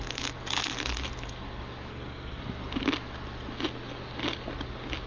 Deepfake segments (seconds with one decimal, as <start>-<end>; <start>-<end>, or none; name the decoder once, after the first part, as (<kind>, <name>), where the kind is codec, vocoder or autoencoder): 1.9-2.4 (codec, SNAC)